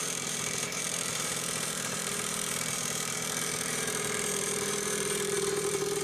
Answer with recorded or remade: remade